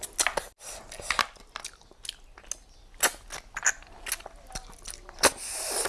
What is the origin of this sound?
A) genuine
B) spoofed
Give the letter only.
A